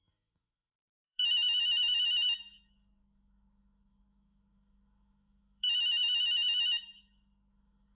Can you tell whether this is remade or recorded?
remade